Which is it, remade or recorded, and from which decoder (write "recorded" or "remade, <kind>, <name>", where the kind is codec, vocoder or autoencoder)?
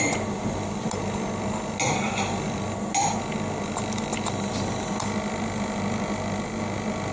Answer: recorded